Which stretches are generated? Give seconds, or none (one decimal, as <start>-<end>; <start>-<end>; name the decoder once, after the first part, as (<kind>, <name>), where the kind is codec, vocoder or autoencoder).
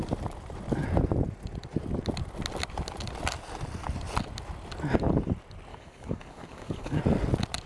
5.7-7.0 (codec, DAC)